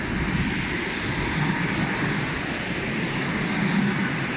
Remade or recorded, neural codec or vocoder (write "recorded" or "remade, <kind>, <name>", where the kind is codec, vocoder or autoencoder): recorded